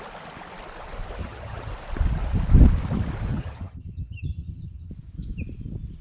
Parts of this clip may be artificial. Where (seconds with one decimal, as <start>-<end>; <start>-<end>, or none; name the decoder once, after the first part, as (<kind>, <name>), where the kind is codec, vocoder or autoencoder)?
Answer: 1.2-1.7 (vocoder, HiFi-GAN); 3.3-4.9